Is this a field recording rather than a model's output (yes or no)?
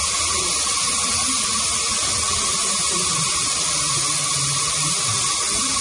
yes